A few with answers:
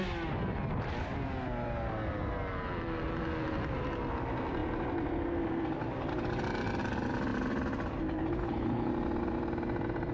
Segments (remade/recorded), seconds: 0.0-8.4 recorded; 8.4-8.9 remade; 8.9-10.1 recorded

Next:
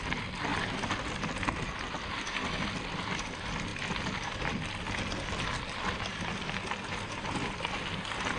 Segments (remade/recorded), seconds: 0.0-8.4 recorded

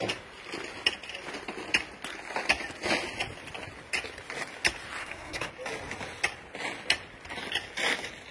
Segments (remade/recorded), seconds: 0.0-5.0 recorded; 5.0-5.5 remade; 5.5-8.3 recorded

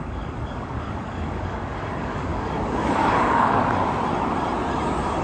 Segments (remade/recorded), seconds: 0.0-3.6 remade; 3.6-5.2 recorded

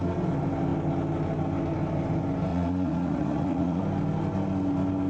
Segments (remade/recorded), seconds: 0.0-2.5 recorded; 2.5-3.8 remade; 3.8-5.1 recorded

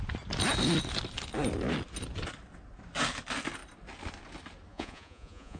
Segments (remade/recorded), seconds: 0.0-4.7 recorded; 4.7-5.6 remade